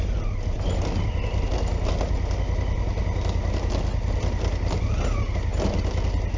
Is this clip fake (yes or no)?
no